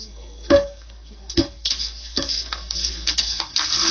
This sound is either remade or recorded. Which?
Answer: remade